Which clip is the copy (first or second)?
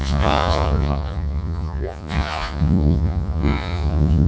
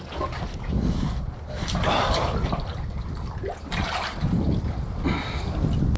first